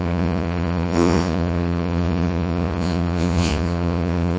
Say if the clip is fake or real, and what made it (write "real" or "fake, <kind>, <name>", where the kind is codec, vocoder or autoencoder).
fake, vocoder, Vocos